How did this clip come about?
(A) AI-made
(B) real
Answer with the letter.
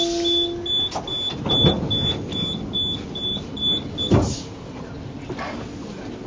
B